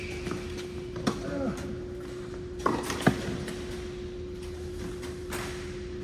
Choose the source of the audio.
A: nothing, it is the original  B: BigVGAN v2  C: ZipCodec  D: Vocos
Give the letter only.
A